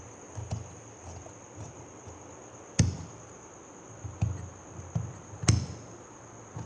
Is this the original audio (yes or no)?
yes